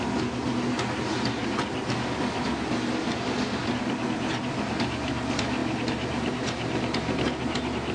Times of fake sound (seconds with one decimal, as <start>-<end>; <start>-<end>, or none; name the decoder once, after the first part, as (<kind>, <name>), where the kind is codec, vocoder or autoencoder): none